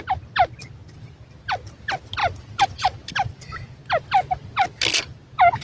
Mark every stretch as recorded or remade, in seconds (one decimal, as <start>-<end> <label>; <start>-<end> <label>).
0.0-2.2 recorded; 2.2-3.8 remade; 3.8-5.6 recorded